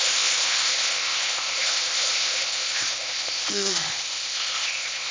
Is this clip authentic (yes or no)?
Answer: no